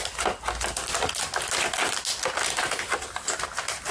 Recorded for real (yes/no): yes